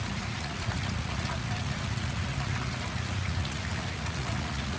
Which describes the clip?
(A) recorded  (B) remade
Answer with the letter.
B